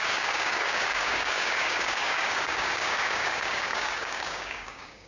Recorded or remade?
remade